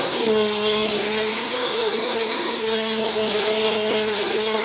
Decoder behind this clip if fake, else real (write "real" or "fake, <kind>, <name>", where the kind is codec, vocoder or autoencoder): fake, codec, SNAC